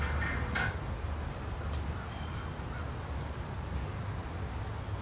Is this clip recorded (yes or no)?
yes